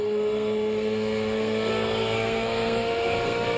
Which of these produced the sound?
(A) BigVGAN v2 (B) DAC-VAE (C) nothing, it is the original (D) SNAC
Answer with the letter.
D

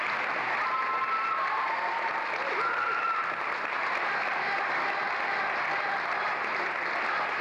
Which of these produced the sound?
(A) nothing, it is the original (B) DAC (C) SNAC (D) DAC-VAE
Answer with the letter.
A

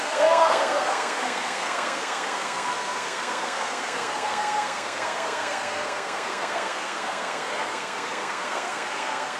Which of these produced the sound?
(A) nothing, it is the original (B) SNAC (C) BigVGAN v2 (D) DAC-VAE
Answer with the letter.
B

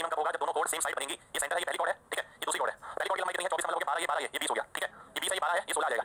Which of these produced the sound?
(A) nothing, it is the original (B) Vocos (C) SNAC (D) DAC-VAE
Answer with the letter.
A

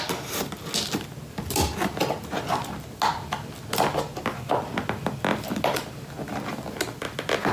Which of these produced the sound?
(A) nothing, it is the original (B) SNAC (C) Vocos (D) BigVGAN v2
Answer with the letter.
A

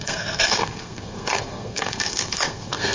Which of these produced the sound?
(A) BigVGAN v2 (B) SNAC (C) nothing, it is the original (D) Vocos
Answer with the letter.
B